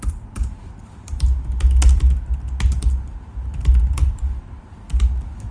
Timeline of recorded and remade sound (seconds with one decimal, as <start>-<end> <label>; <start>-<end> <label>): 0.0-1.4 remade; 1.4-3.2 recorded; 3.2-5.5 remade